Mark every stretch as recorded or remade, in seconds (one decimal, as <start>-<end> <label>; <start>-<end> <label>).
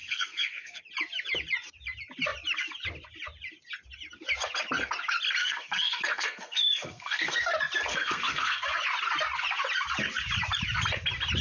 0.0-0.8 remade; 0.8-5.4 recorded; 5.4-7.5 remade; 7.5-7.9 recorded; 7.9-8.8 remade; 8.8-11.4 recorded